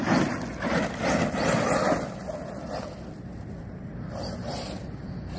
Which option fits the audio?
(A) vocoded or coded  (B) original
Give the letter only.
B